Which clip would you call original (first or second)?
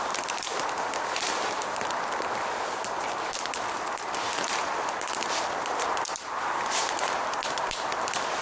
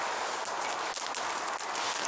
second